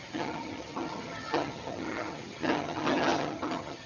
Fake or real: fake